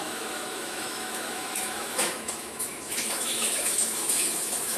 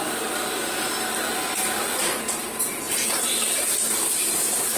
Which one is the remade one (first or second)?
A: first